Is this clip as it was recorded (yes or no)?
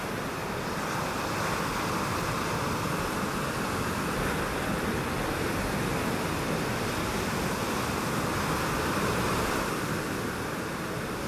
yes